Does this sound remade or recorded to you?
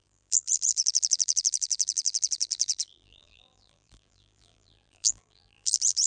remade